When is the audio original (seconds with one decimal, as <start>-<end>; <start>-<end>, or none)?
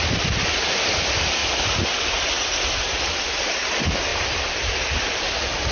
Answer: 0.0-5.7